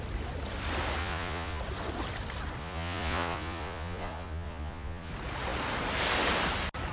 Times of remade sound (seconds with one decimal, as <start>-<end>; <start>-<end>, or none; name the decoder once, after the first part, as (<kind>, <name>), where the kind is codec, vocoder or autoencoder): 1.0-1.6 (vocoder, Vocos); 2.6-5.1

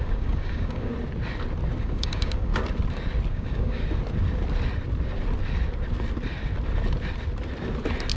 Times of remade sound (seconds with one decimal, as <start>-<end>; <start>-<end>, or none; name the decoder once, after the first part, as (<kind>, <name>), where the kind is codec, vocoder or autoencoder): 0.0-0.9 (codec, DAC); 1.8-2.5; 3.3-3.8

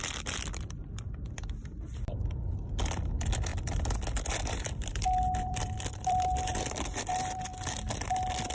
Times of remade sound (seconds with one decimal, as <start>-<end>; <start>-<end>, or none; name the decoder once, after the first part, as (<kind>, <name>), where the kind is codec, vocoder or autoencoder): 0.0-3.5 (vocoder, BigVGAN v2); 4.3-7.5; 8.1-8.5

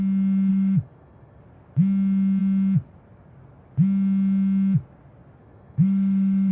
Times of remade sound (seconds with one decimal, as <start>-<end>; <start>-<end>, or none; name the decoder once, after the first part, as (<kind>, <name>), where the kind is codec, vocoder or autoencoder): 0.5-1.4 (autoencoder, DAC-VAE); 5.4-6.5

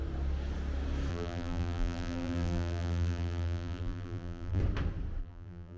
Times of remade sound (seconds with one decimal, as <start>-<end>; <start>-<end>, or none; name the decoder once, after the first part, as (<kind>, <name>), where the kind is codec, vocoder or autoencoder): 1.1-4.6 (vocoder, BigVGAN v2); 5.2-5.8

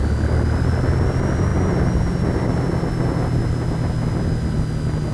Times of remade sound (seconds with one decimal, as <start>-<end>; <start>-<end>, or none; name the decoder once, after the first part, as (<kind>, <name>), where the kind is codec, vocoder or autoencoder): none

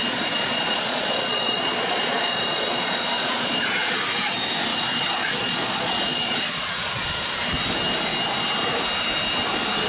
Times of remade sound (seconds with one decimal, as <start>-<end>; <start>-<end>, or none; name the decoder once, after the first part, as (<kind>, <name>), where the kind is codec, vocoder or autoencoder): 0.0-4.0 (vocoder, Vocos); 4.7-7.3